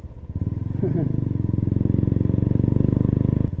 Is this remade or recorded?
recorded